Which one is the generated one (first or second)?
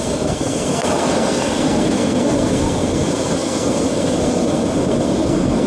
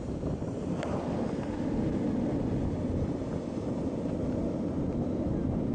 first